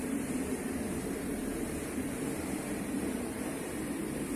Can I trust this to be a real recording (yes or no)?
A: no